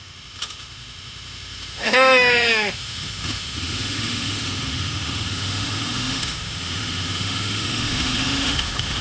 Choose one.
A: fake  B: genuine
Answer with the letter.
A